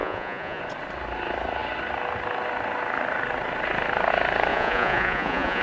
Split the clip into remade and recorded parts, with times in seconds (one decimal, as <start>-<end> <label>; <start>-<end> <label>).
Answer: 0.0-0.6 remade; 0.6-4.5 recorded; 4.5-5.6 remade

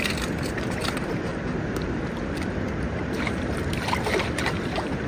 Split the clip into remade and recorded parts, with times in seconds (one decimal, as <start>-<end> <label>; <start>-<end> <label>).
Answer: 0.0-1.3 remade; 1.3-2.8 recorded; 2.8-5.1 remade

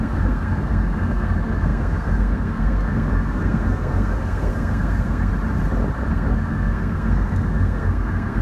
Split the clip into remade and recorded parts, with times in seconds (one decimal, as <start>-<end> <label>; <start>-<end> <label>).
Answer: 0.0-5.3 remade; 5.3-6.1 recorded; 6.1-8.4 remade

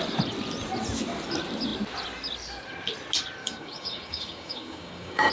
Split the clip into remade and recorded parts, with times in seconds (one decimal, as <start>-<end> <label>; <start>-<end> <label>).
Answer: 0.0-3.4 recorded; 3.4-5.3 remade

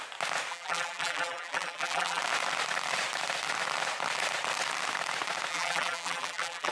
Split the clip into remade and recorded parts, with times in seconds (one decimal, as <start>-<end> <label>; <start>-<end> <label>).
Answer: 0.0-0.5 recorded; 0.5-2.2 remade; 2.2-5.5 recorded; 5.5-6.7 remade